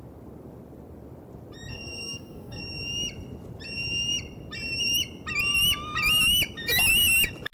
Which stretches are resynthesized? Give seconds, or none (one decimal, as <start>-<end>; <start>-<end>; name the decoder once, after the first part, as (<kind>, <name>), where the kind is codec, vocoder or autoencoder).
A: 1.7-2.6 (codec, SNAC)